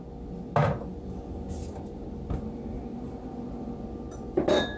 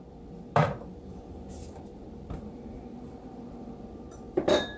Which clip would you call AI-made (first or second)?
second